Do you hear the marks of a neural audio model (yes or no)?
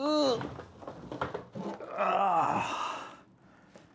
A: no